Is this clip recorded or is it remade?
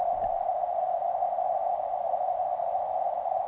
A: recorded